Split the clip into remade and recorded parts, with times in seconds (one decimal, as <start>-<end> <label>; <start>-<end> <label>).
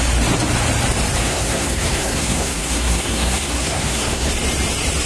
0.0-1.2 recorded; 1.2-4.3 remade; 4.3-5.1 recorded